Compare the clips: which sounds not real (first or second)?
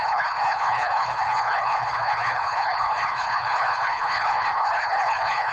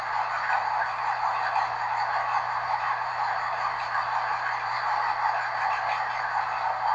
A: first